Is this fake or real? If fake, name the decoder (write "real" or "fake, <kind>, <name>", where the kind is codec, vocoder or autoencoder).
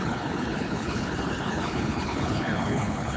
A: fake, codec, HILCodec